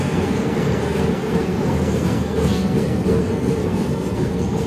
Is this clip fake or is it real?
fake